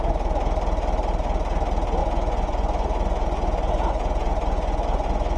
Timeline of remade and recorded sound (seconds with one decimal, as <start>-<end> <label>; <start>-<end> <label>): 0.0-2.0 recorded; 2.0-5.4 remade